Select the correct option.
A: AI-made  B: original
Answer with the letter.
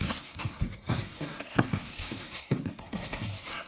A